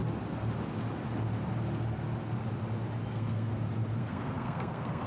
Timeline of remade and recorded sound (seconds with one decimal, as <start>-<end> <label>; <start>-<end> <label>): 0.0-3.1 recorded; 3.1-3.5 remade; 3.5-4.0 recorded; 4.0-5.1 remade